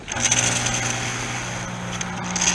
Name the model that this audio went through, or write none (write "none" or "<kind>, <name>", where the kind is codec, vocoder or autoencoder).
none